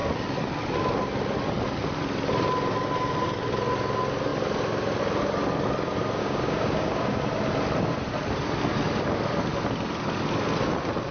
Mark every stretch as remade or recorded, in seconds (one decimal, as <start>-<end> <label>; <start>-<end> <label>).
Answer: 0.0-6.2 recorded; 6.2-7.2 remade; 7.2-11.1 recorded